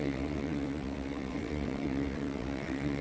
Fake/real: fake